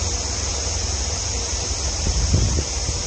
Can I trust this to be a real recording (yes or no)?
no